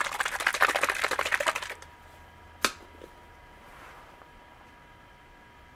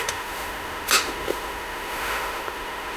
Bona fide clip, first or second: first